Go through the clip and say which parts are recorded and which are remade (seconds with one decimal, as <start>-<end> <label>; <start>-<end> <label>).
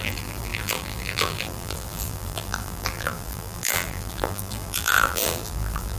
0.0-6.0 remade